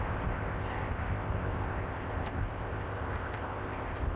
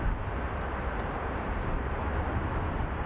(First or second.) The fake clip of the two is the first